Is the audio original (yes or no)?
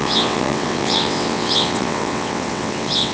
no